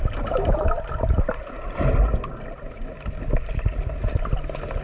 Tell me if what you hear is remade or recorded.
recorded